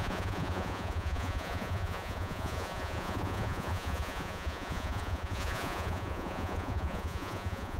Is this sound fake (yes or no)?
yes